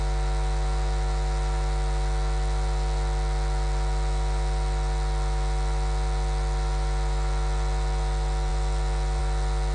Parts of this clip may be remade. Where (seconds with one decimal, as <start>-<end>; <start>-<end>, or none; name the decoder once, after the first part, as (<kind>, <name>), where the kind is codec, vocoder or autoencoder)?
none